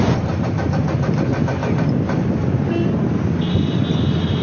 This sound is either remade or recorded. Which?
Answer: recorded